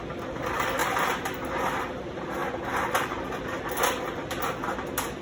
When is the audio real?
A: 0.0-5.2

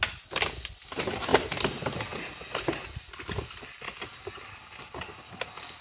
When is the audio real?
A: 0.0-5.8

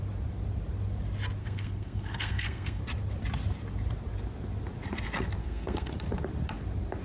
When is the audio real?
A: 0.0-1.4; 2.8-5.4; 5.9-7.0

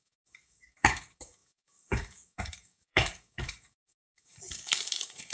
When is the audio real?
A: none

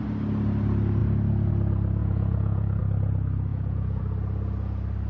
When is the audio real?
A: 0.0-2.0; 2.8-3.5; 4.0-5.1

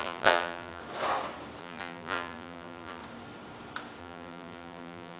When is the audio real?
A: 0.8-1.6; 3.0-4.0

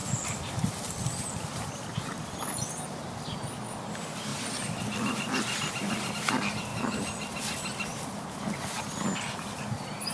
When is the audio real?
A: 1.7-4.3; 6.1-10.1

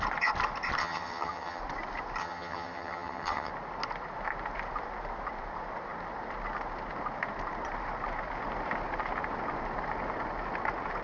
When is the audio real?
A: 0.0-0.8; 1.6-2.2; 3.5-11.0